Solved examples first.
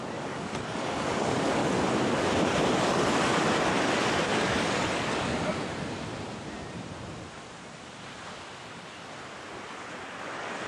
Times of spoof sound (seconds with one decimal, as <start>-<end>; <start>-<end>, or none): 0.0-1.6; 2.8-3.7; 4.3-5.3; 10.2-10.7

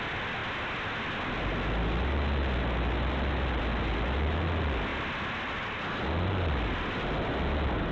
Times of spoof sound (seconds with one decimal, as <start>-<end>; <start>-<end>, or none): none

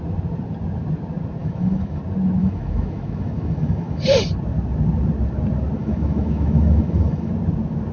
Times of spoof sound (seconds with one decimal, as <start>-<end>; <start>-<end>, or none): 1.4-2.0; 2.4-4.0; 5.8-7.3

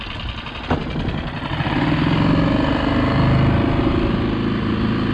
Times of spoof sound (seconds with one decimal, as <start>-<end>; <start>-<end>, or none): none

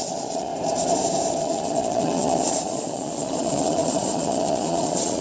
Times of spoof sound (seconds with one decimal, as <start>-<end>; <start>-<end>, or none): 0.0-0.5; 1.4-5.2

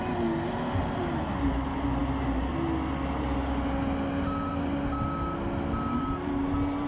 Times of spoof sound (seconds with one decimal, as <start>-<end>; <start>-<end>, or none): 0.8-1.3

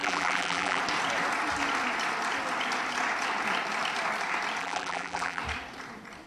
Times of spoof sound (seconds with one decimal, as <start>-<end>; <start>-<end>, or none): 0.0-0.8; 4.6-5.4